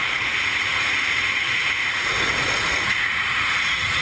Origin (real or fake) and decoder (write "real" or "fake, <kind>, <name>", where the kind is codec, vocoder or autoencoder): fake, vocoder, Vocos